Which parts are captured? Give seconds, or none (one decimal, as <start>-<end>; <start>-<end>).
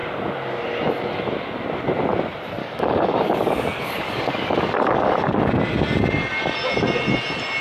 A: 0.0-2.6; 5.5-7.6